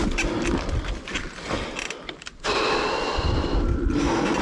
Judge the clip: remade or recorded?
recorded